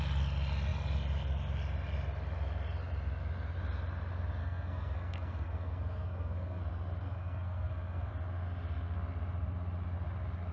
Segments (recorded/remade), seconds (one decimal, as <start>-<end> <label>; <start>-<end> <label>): 0.0-4.4 recorded; 4.4-6.6 remade; 6.6-7.0 recorded; 7.0-8.1 remade; 8.1-10.5 recorded